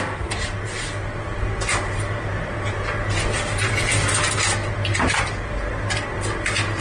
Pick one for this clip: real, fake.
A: real